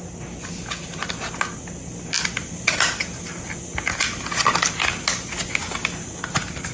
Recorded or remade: recorded